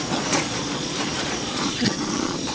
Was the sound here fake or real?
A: fake